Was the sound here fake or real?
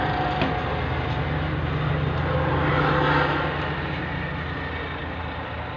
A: real